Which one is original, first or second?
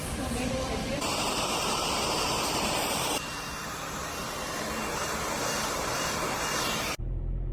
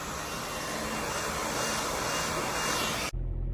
second